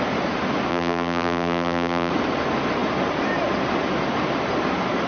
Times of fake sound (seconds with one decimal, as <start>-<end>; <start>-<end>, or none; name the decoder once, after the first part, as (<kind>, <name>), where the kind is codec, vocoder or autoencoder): 0.7-2.1 (vocoder, BigVGAN v2)